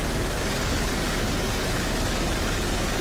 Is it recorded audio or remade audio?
remade